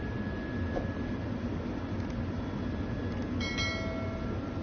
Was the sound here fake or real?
real